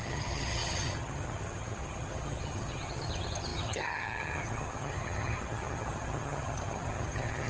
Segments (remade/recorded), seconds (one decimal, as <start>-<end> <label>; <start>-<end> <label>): 0.0-7.5 remade